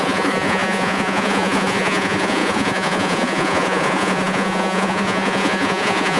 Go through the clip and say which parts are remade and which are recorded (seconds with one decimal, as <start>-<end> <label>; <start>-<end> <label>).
0.0-6.2 remade